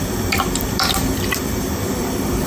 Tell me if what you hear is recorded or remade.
remade